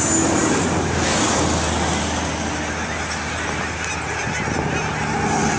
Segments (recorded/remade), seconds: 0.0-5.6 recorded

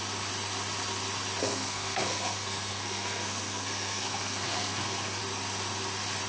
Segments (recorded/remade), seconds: 0.0-1.4 recorded; 1.4-5.2 remade; 5.2-6.3 recorded

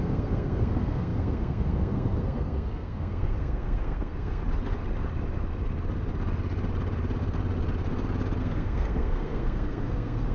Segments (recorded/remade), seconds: 0.0-4.4 remade; 4.4-8.4 recorded; 8.4-10.3 remade